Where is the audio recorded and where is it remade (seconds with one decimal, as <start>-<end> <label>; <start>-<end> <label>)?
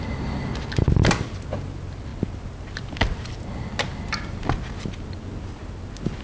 0.0-6.2 recorded